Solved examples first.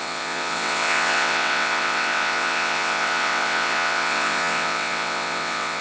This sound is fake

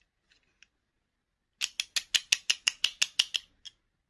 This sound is real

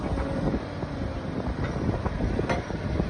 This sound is fake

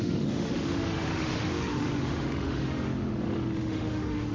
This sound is fake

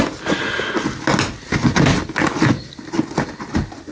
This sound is real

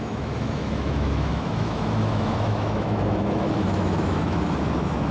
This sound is fake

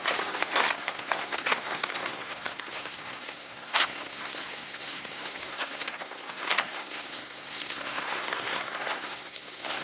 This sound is fake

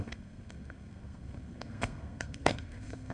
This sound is fake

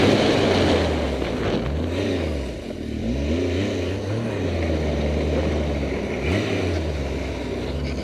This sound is real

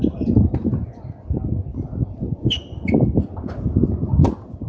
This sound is real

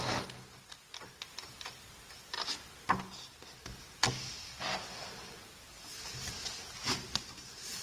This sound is real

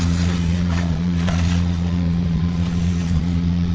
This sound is fake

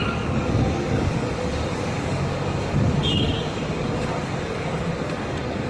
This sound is fake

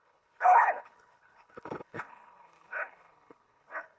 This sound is fake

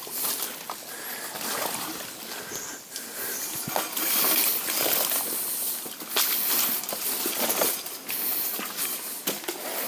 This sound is real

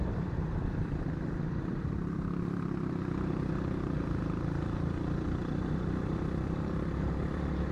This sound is fake